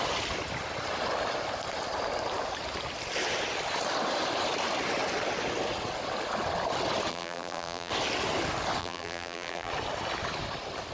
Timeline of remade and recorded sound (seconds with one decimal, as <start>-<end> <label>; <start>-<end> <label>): 0.0-7.1 recorded; 7.1-7.9 remade; 7.9-8.8 recorded; 8.8-9.7 remade; 9.7-10.9 recorded